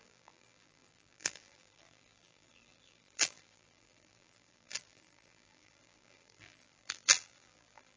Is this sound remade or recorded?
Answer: remade